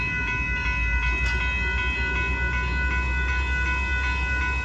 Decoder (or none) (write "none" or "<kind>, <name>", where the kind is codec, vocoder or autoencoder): none